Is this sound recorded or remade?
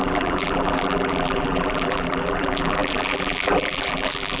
remade